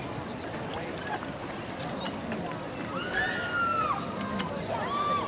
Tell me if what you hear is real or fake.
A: real